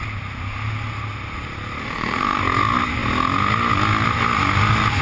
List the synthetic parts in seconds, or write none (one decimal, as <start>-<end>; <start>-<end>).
1.8-2.4